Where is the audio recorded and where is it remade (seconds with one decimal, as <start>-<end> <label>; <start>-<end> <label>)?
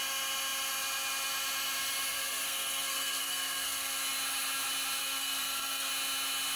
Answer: 0.0-2.1 recorded; 2.1-4.0 remade; 4.0-5.0 recorded; 5.0-5.9 remade; 5.9-6.6 recorded